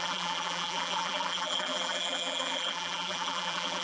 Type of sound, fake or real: fake